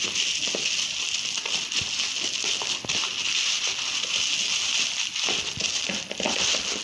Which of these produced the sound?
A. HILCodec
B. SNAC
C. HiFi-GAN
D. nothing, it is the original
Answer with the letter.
D